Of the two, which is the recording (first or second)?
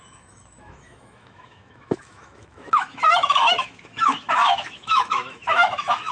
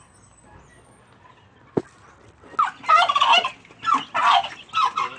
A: second